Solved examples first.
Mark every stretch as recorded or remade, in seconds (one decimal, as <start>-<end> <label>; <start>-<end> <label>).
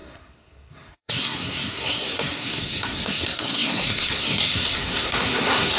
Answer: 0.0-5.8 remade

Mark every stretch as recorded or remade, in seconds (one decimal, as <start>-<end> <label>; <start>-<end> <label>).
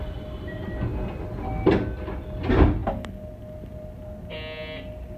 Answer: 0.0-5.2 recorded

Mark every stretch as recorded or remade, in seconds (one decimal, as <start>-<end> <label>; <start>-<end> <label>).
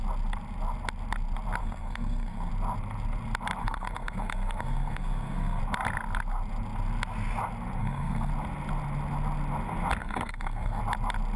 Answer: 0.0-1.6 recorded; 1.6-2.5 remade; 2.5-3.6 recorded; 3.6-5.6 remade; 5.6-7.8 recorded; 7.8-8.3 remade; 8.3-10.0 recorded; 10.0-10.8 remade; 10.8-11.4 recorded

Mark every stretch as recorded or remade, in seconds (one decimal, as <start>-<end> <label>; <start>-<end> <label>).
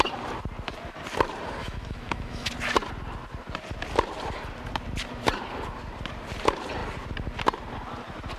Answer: 0.0-1.6 recorded; 1.6-2.5 remade; 2.5-8.4 recorded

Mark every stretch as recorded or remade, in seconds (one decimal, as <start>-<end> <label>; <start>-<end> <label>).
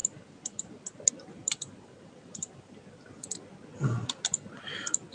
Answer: 0.0-0.7 remade; 0.7-1.4 recorded; 1.4-2.7 remade; 2.7-5.1 recorded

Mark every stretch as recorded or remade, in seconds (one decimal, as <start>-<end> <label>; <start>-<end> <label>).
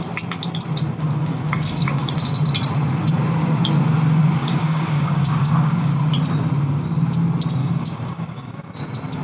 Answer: 0.0-1.2 recorded; 1.2-2.1 remade; 2.1-4.4 recorded; 4.4-5.9 remade; 5.9-7.6 recorded; 7.6-8.7 remade; 8.7-9.2 recorded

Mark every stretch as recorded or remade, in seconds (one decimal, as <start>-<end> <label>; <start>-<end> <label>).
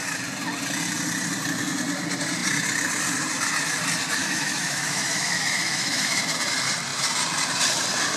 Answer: 0.0-4.2 recorded; 4.2-6.2 remade; 6.2-8.2 recorded